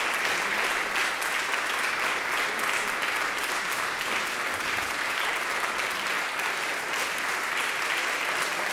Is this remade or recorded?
recorded